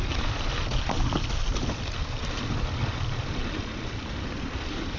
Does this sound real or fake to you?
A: real